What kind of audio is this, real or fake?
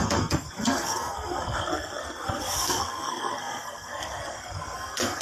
fake